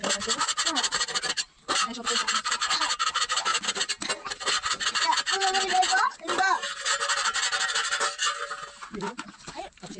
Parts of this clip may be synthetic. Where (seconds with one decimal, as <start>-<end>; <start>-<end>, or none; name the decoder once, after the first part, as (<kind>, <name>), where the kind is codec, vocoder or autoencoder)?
1.3-3.5 (vocoder, BigVGAN v2); 7.1-8.2; 9.4-10.0